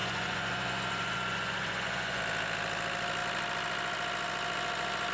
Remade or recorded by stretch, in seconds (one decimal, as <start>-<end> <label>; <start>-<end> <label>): 0.0-2.2 remade; 2.2-5.1 recorded